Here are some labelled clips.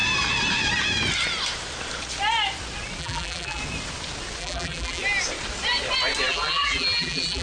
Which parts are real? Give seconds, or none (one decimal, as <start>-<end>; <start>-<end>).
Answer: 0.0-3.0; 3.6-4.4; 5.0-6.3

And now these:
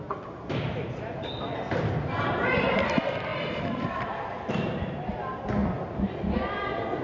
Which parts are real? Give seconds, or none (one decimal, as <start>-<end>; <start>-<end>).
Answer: 0.0-3.3; 4.5-7.0

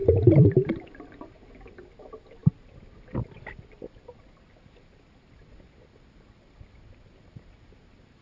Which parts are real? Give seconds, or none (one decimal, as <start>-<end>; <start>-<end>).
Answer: 0.5-8.2

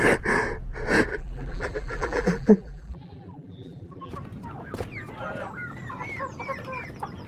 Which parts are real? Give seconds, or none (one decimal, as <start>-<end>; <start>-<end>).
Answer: 0.0-1.1; 4.1-7.3

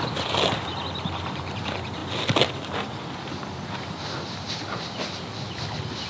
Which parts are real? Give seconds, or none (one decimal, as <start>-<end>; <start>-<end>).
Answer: 2.0-6.1

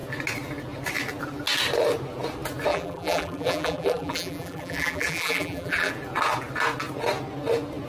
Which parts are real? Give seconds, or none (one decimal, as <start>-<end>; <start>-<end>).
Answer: 0.0-2.7; 5.9-7.9

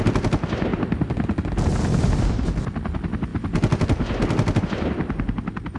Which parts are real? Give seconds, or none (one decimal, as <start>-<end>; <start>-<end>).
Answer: 0.0-0.7; 2.3-3.3; 4.6-5.8